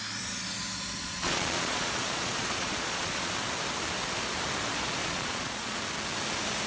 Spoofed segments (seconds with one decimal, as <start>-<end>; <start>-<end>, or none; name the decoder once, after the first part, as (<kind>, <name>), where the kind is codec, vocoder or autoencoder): 1.0-3.3 (vocoder, Vocos); 5.0-5.8